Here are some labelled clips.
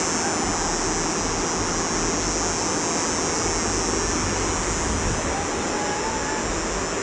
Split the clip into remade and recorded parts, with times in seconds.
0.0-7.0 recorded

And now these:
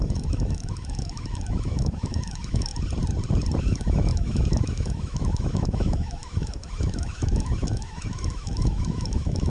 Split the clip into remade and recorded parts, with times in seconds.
0.0-2.7 remade; 2.7-3.6 recorded; 3.6-9.5 remade

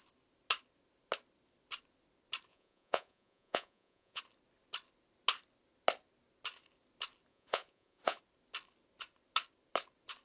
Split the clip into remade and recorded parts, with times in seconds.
0.0-2.5 recorded; 2.5-4.2 remade; 4.2-7.3 recorded; 7.3-8.2 remade; 8.2-10.2 recorded